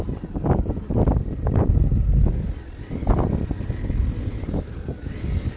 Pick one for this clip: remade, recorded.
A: recorded